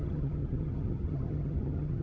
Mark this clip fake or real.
fake